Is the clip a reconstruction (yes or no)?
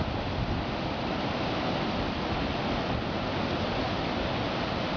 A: no